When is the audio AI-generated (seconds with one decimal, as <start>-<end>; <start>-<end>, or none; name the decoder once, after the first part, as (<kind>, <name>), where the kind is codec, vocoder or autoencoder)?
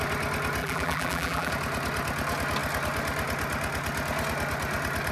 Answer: 0.6-1.5 (vocoder, BigVGAN v2)